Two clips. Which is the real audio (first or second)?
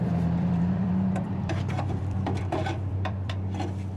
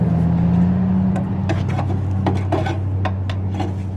second